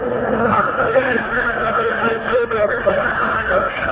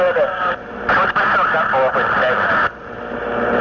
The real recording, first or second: second